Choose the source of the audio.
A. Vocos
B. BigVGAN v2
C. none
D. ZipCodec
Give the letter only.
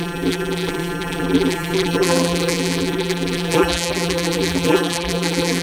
B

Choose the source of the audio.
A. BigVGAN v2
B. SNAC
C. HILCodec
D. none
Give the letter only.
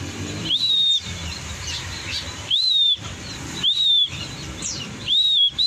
A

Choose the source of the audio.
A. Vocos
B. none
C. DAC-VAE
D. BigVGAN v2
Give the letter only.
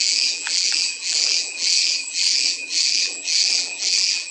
D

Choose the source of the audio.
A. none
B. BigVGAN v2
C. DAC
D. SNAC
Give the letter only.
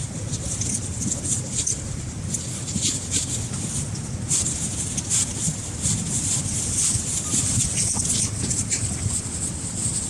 A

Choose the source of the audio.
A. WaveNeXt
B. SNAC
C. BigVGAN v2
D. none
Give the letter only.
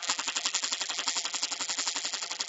C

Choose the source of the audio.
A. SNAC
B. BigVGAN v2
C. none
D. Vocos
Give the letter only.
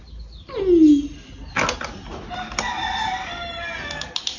C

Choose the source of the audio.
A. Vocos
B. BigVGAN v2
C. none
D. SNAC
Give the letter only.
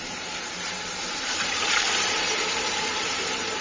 B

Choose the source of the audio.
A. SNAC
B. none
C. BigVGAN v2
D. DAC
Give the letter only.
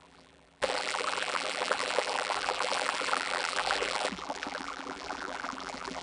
C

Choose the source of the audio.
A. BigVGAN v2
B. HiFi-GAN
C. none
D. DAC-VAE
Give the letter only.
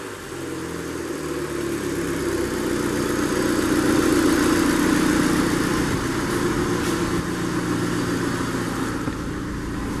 C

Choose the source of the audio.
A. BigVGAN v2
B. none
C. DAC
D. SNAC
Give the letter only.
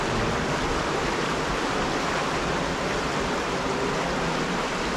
B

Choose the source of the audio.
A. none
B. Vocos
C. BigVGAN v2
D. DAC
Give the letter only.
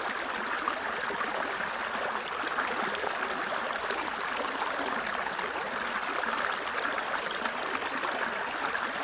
C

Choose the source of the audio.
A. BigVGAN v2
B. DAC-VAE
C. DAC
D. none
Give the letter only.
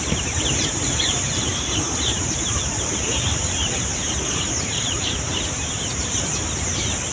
A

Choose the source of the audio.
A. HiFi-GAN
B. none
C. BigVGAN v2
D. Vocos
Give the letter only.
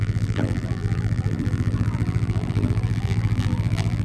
C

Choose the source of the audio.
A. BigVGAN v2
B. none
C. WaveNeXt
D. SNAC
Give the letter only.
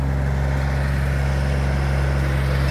B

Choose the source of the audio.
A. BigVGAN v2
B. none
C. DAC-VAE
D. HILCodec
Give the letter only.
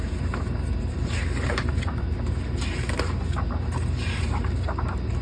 A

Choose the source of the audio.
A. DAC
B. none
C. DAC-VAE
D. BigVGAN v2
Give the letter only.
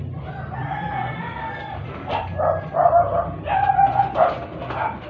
D